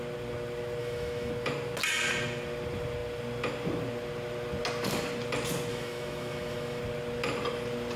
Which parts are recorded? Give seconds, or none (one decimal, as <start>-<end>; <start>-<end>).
0.0-0.8; 1.3-5.7; 6.8-8.0